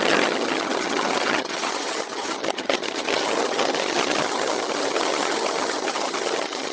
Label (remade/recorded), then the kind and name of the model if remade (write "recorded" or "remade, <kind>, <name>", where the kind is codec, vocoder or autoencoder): remade, vocoder, HiFi-GAN